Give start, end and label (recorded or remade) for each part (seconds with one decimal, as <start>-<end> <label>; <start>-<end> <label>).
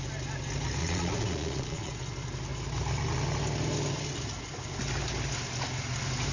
0.0-0.8 recorded; 0.8-1.9 remade; 1.9-6.3 recorded